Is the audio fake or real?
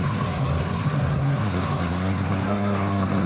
fake